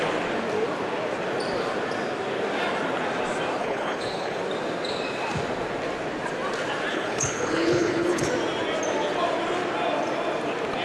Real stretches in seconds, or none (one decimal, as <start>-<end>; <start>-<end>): 0.0-3.6; 4.4-6.9; 8.3-10.8